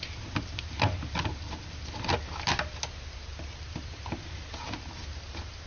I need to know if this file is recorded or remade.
recorded